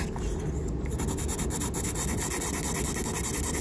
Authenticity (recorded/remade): recorded